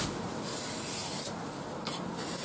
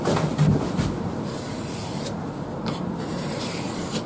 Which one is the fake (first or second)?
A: second